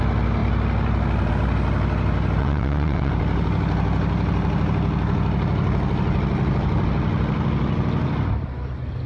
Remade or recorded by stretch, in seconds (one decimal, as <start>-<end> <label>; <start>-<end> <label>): 0.0-2.4 recorded; 2.4-3.1 remade; 3.1-9.1 recorded